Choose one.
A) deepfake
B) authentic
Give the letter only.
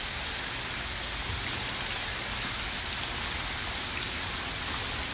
B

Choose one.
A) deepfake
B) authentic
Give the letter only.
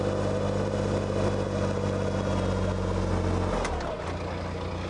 B